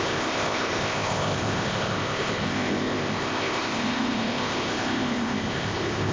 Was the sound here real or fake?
fake